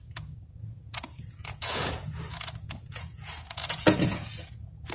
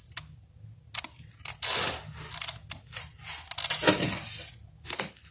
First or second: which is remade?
first